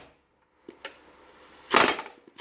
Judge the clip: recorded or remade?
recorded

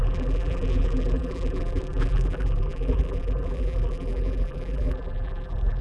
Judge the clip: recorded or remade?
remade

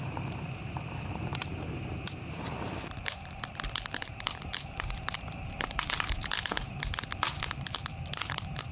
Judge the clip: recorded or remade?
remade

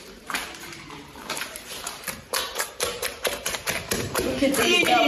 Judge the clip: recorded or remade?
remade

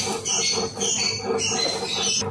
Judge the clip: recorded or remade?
recorded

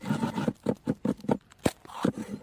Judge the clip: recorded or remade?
remade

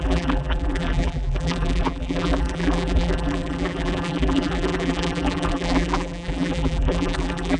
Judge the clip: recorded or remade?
remade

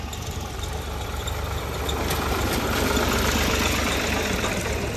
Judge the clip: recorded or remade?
remade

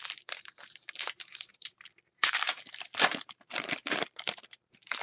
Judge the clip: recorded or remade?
remade